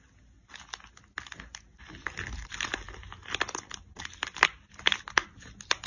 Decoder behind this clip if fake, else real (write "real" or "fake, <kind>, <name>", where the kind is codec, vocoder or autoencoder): real